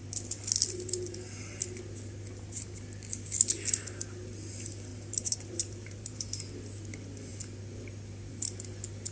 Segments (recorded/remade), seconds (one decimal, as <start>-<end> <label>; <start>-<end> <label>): 0.0-4.9 recorded; 4.9-6.3 remade; 6.3-9.1 recorded